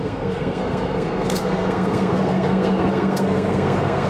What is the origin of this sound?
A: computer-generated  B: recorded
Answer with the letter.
A